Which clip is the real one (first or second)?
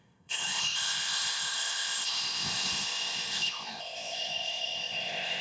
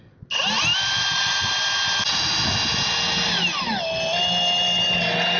second